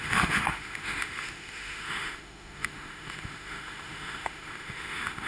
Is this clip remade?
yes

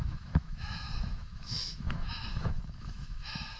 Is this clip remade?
yes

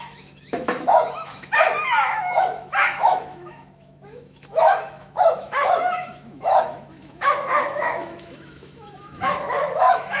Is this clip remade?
yes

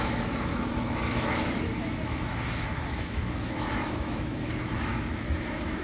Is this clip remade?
yes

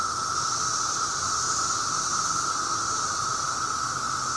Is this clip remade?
no